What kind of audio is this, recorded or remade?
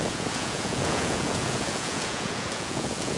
remade